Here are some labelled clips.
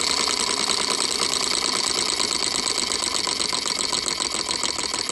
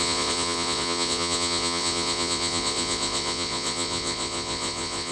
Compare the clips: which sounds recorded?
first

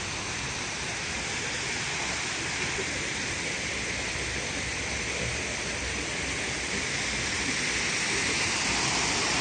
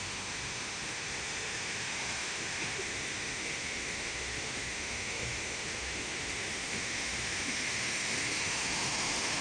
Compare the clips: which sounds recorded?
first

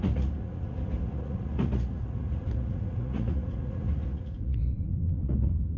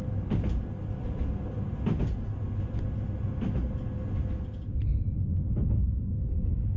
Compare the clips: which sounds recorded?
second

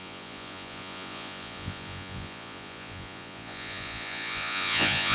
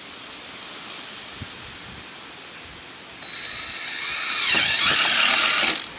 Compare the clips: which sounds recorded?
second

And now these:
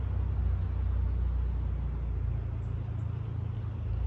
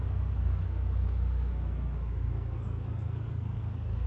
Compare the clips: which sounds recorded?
first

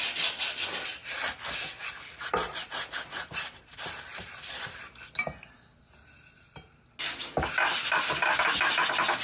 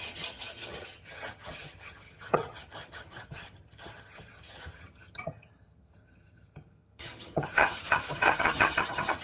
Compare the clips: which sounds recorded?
first